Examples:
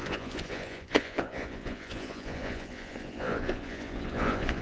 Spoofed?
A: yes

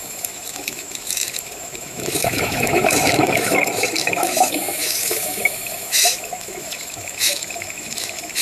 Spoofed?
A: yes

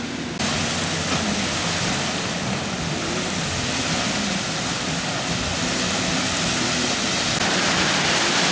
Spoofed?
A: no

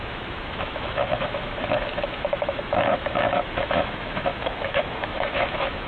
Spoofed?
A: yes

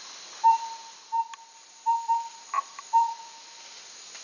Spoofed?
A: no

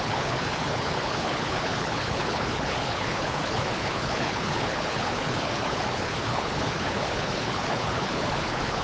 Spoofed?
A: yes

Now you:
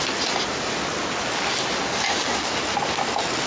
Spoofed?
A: no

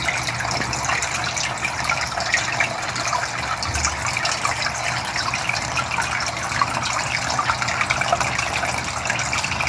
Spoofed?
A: no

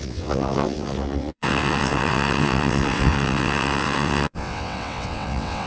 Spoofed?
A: yes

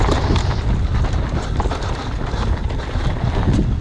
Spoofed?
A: no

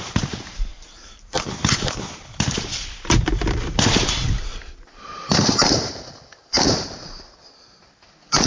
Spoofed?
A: yes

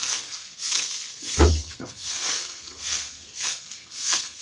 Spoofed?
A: yes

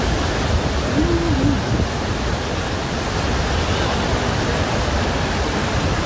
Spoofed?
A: no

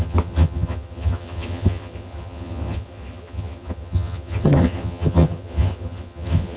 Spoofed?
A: yes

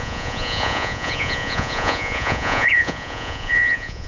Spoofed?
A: yes